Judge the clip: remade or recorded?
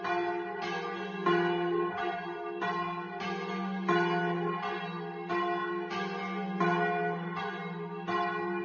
recorded